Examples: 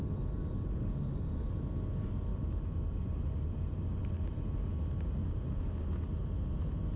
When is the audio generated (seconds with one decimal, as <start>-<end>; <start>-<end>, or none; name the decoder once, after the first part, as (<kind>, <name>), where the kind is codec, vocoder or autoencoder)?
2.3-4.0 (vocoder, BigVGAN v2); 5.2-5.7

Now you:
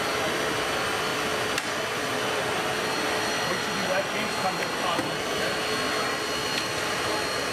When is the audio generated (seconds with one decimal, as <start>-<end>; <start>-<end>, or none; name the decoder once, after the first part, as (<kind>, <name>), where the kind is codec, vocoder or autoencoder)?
1.1-5.6 (vocoder, BigVGAN v2); 6.4-7.1

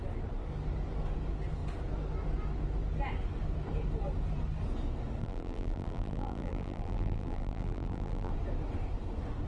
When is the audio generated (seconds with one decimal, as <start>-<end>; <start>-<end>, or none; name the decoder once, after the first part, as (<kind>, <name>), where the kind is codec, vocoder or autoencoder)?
5.2-8.3 (vocoder, BigVGAN v2)